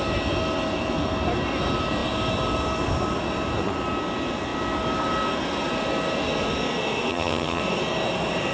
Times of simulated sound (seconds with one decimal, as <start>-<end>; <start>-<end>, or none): 7.1-7.6